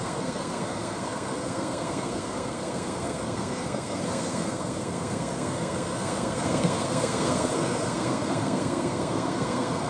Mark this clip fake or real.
fake